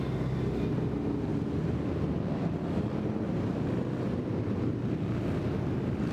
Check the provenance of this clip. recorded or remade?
recorded